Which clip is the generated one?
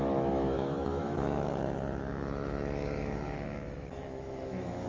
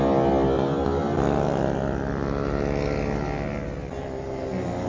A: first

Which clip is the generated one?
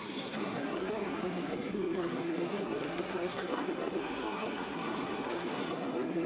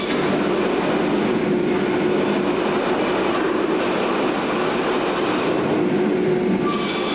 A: first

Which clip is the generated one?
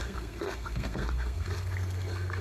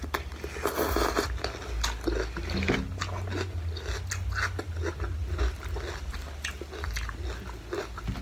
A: first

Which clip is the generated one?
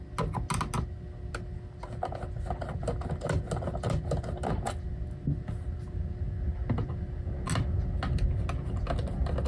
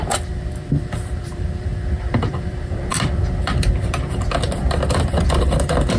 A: second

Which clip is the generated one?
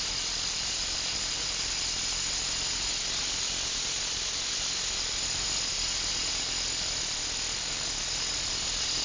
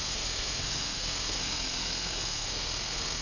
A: second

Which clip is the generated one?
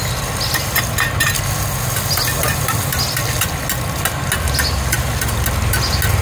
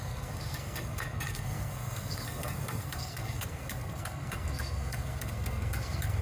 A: second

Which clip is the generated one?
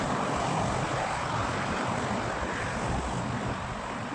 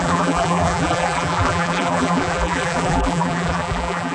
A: second